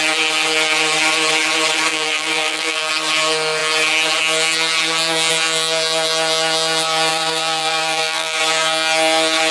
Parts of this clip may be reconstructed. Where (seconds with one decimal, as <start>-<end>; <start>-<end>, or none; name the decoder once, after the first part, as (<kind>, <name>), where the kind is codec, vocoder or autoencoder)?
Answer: 1.9-2.9 (vocoder, BigVGAN v2); 7.1-8.4

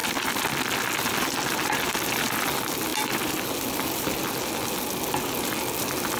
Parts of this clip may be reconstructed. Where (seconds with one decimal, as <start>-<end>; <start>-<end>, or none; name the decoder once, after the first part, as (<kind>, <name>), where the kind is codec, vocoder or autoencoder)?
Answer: none